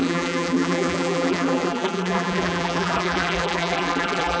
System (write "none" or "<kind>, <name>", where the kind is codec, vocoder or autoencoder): vocoder, BigVGAN v2